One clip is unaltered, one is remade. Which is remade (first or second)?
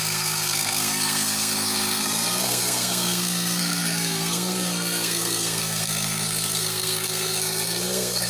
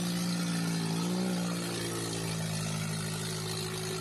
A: first